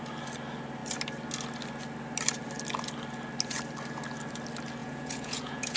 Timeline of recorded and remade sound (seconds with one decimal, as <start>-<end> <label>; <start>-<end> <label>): 0.0-4.8 recorded; 4.8-5.8 remade